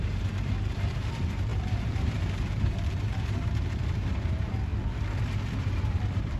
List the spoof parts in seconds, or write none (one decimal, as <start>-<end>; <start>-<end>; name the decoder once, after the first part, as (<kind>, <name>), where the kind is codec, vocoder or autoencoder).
0.0-4.7 (vocoder, BigVGAN v2); 5.6-6.4